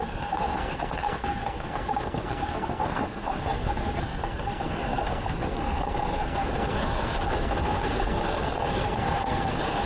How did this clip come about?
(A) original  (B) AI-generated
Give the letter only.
B